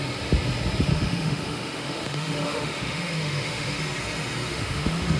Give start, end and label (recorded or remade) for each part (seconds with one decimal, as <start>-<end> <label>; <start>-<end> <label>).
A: 0.0-0.9 recorded; 0.9-3.8 remade; 3.8-4.5 recorded; 4.5-5.2 remade